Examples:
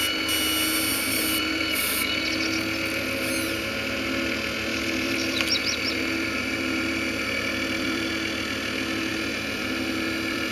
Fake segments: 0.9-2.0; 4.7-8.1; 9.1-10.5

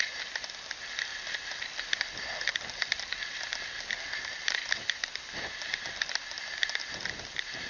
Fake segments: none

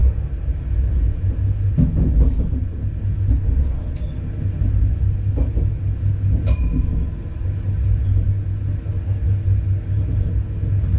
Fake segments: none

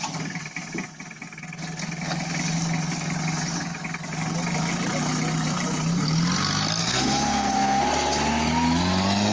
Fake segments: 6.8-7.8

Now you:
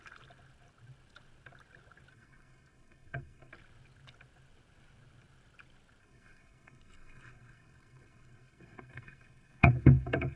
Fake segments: 2.1-3.5; 6.0-10.4